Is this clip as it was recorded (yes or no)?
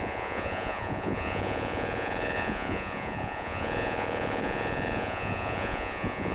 no